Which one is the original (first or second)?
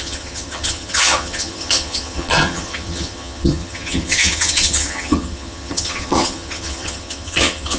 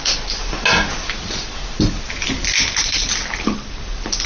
second